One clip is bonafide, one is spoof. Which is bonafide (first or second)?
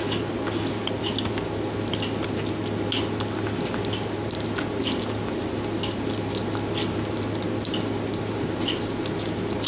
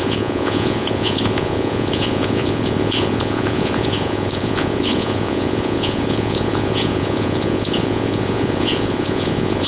first